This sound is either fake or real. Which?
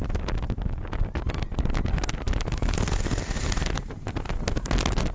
real